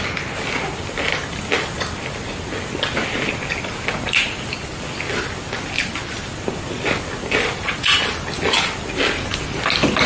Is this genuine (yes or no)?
yes